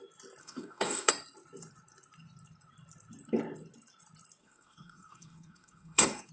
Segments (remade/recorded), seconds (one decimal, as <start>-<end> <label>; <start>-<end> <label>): 0.0-0.4 recorded; 0.4-1.1 remade; 1.1-4.4 recorded; 4.4-6.3 remade